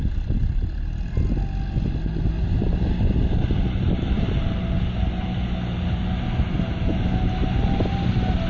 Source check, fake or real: real